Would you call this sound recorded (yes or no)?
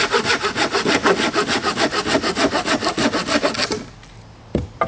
yes